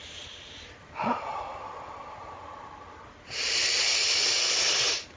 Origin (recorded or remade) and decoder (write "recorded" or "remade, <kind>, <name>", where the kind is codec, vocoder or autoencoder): recorded